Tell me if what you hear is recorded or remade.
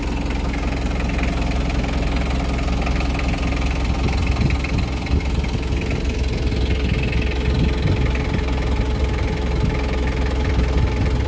recorded